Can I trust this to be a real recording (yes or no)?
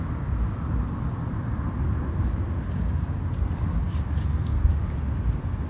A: yes